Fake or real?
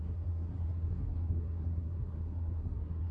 fake